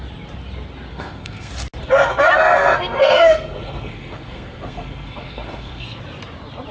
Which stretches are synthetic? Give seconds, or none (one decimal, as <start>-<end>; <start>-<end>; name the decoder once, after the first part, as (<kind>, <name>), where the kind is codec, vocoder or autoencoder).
0.9-1.5 (codec, SNAC); 2.1-6.0